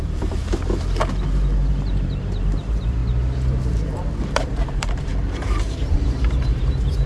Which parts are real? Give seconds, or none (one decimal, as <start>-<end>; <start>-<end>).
0.4-1.7; 3.0-4.2